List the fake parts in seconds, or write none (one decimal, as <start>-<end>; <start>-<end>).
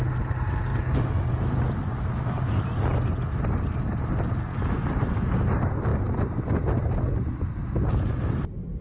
none